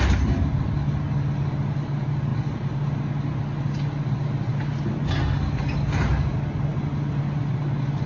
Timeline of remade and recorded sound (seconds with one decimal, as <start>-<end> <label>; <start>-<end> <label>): 0.0-8.1 recorded